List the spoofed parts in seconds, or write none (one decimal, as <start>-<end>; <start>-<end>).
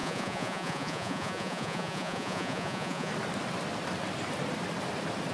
0.0-3.1